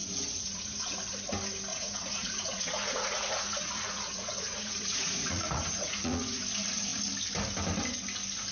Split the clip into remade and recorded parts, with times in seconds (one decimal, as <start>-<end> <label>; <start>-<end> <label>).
0.0-1.0 remade; 1.0-1.7 recorded; 1.7-6.4 remade; 6.4-8.5 recorded